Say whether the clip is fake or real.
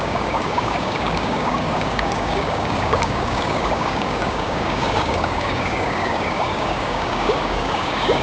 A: fake